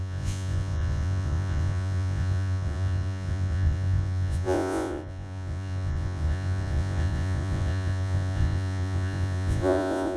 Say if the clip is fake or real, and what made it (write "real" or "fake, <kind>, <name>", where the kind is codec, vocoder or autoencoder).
fake, vocoder, Vocos